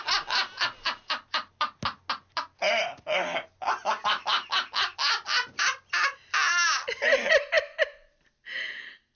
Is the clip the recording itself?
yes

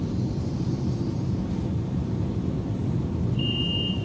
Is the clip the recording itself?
yes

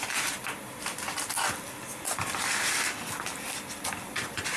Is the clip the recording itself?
yes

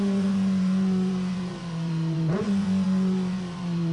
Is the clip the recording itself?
no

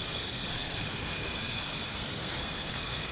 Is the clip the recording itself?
no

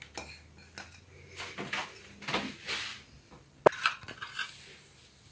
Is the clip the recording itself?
yes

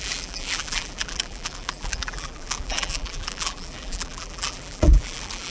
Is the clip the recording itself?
no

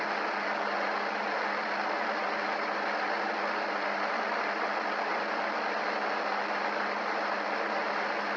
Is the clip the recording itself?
yes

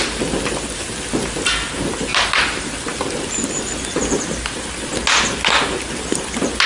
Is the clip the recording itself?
yes